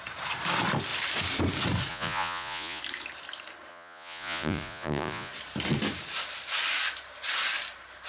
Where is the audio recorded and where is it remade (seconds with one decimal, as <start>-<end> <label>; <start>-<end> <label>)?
0.0-1.9 recorded; 1.9-2.8 remade; 2.8-3.7 recorded; 3.7-5.3 remade; 5.3-8.1 recorded